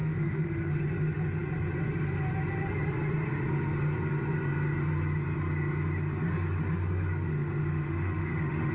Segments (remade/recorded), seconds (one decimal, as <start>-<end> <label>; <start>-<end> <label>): 0.0-0.7 remade; 0.7-7.3 recorded; 7.3-8.7 remade